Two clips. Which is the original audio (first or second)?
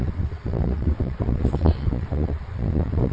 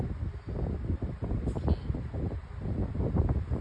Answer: second